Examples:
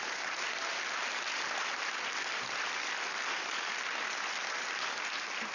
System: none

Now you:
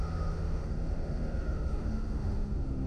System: autoencoder, DAC-VAE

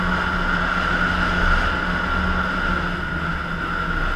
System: none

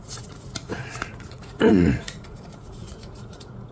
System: vocoder, Vocos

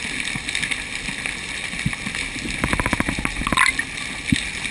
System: none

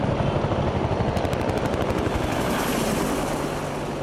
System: vocoder, BigVGAN v2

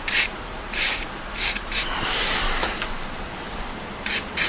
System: vocoder, BigVGAN v2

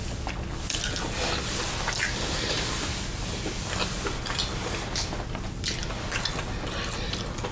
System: none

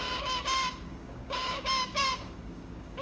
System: codec, DAC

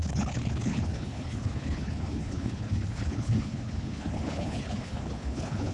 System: codec, HILCodec